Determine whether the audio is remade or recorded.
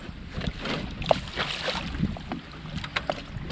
recorded